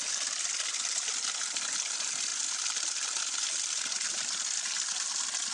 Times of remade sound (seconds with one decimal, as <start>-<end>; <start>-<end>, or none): none